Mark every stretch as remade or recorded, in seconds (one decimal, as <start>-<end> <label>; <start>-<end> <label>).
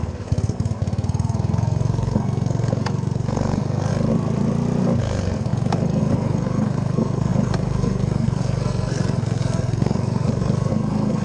0.0-3.9 remade; 3.9-5.0 recorded; 5.0-11.2 remade